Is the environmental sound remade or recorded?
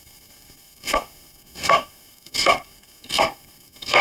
remade